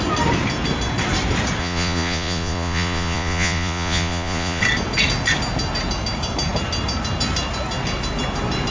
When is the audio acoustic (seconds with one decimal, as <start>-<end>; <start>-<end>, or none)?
0.0-1.6; 4.6-8.7